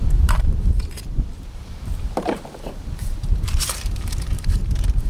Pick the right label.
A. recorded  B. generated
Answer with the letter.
B